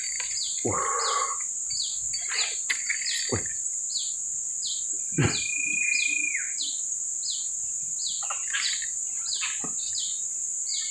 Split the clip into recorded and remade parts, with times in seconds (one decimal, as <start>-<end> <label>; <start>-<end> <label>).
0.0-7.1 recorded; 7.1-10.9 remade